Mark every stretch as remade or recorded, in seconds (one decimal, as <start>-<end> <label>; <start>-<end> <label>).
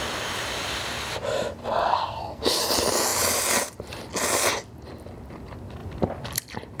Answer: 0.0-1.6 recorded; 1.6-2.6 remade; 2.6-6.8 recorded